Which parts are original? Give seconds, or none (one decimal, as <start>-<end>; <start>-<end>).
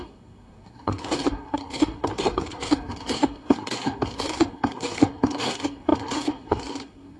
none